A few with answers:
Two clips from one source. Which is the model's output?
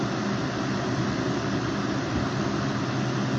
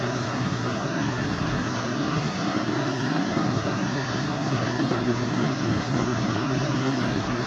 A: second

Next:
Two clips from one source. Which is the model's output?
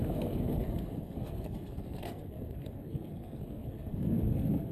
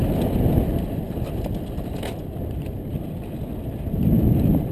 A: first